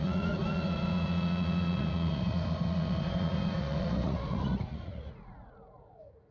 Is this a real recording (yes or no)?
no